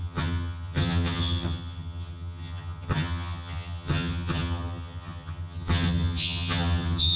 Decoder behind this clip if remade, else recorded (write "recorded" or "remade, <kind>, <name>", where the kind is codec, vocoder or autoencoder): remade, vocoder, HiFi-GAN